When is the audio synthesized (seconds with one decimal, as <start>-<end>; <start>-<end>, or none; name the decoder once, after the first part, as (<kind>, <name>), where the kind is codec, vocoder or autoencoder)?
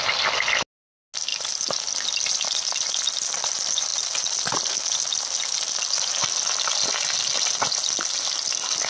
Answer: none